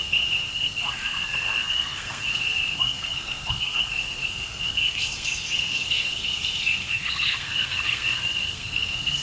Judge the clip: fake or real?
fake